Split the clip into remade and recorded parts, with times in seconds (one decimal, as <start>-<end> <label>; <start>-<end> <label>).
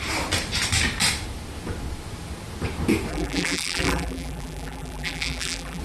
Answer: 0.0-3.1 recorded; 3.1-5.8 remade